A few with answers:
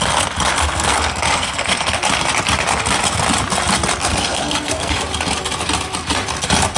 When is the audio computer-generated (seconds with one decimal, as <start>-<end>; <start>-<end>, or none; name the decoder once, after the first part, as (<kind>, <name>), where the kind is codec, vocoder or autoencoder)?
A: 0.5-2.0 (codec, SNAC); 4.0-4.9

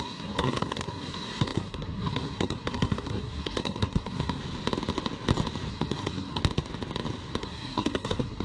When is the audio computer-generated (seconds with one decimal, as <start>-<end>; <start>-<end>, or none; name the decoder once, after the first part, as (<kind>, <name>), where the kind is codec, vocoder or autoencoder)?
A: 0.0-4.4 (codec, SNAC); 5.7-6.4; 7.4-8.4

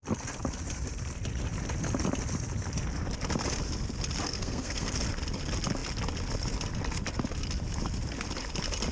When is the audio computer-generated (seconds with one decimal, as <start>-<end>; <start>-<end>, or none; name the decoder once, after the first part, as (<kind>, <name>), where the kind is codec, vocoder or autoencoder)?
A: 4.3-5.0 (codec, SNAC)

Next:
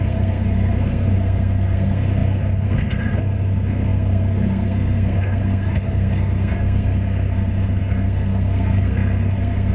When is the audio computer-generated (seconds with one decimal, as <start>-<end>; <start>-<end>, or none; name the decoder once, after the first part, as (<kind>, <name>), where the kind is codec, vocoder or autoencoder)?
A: 0.0-9.7 (codec, SNAC)

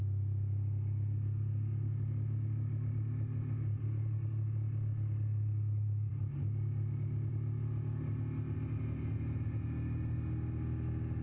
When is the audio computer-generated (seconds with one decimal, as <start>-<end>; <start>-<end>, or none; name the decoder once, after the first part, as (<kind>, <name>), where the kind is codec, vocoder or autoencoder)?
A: none

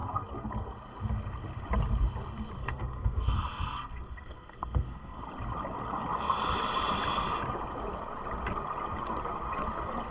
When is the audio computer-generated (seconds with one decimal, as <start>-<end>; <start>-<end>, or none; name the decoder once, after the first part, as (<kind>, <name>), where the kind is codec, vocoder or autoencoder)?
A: 2.6-5.2 (codec, SNAC)

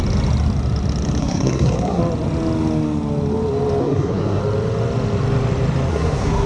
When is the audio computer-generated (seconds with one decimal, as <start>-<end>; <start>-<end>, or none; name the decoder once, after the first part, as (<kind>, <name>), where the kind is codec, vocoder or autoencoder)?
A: 1.2-2.0 (codec, SNAC); 3.8-4.4; 5.9-6.5